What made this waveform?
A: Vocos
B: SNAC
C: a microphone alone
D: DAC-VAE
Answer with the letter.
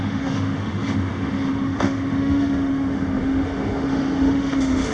D